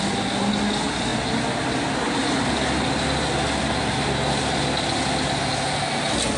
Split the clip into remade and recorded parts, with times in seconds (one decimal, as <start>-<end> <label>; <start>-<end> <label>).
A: 0.0-6.4 recorded